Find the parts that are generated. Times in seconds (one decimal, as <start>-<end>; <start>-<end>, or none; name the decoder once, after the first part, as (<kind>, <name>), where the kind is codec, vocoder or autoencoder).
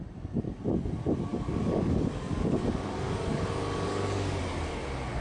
1.3-4.4 (codec, DAC)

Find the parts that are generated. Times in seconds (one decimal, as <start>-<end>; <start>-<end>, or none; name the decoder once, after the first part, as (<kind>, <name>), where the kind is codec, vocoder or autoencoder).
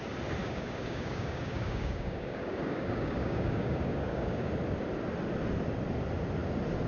0.4-4.5 (codec, DAC)